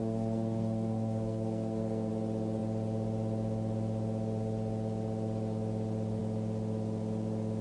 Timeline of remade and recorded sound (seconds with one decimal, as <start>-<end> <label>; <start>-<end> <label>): 0.0-2.1 remade; 2.1-7.6 recorded